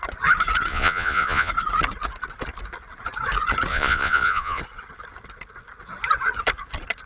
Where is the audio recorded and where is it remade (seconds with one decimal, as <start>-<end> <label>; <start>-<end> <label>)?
0.0-0.7 recorded; 0.7-1.5 remade; 1.5-3.7 recorded; 3.7-4.6 remade; 4.6-7.1 recorded